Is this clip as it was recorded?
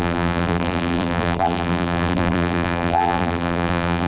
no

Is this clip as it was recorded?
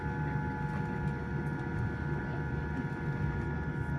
yes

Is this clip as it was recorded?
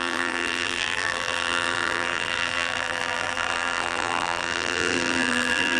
no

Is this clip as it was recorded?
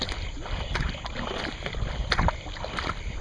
yes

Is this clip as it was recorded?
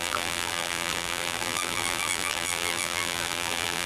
no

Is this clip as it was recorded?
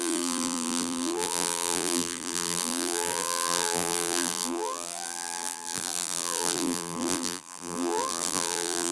no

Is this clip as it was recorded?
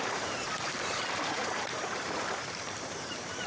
no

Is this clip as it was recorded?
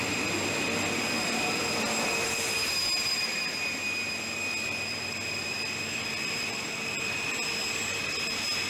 no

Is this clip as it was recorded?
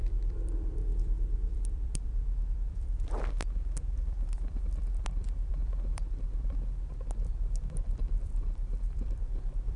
no